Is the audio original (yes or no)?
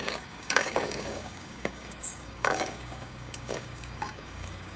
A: no